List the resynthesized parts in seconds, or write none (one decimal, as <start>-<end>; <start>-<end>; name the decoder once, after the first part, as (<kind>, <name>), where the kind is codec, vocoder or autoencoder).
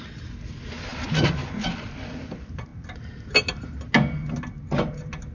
none